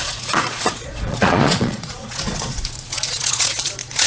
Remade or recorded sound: remade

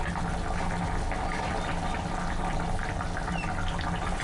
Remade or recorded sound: recorded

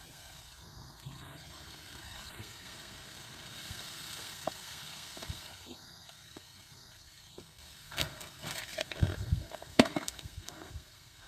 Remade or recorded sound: remade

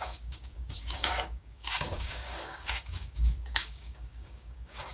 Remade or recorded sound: remade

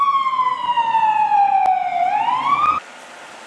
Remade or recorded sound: recorded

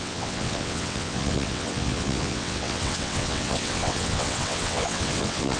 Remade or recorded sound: remade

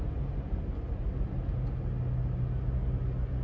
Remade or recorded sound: recorded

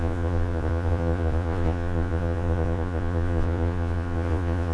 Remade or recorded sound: remade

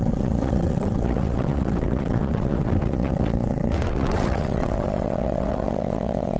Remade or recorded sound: remade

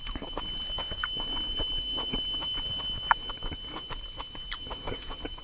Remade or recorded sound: recorded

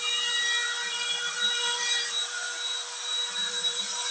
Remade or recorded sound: remade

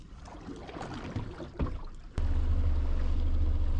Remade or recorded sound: recorded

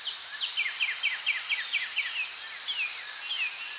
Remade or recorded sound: recorded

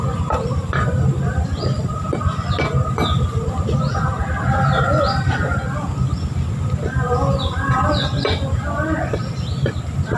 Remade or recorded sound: recorded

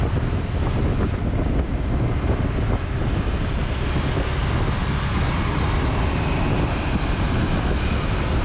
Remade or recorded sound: recorded